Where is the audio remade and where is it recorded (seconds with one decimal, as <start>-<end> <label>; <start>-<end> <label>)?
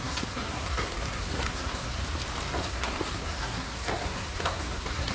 0.0-2.0 remade; 2.0-2.6 recorded; 2.6-5.1 remade